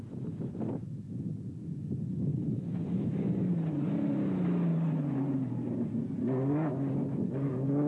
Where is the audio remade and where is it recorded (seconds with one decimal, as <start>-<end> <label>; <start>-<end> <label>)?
0.0-4.7 recorded; 4.7-5.9 remade; 5.9-7.9 recorded